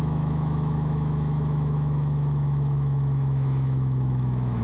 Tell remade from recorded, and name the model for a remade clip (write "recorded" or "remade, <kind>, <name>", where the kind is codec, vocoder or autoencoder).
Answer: remade, autoencoder, DAC-VAE